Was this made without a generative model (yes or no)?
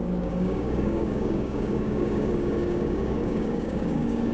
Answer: no